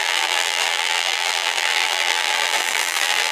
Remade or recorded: remade